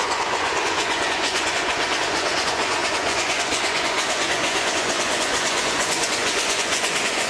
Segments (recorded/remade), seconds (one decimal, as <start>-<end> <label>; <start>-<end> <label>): 0.0-7.3 remade